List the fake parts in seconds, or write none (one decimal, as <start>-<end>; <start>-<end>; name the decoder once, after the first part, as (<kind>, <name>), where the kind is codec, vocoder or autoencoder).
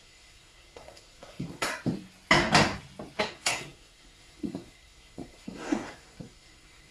0.0-1.7 (codec, SNAC); 3.2-6.9